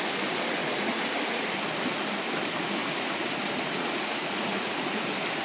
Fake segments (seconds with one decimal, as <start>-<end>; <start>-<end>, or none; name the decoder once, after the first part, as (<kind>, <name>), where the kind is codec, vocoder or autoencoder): 0.6-1.5 (vocoder, Vocos); 2.8-4.9